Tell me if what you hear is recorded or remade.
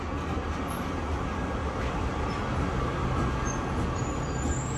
recorded